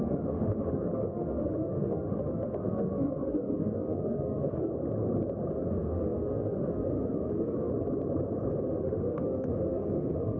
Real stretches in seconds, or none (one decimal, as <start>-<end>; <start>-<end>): 4.7-5.5; 7.7-8.6